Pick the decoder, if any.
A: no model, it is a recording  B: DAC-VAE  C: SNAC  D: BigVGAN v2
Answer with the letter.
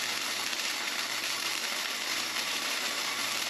D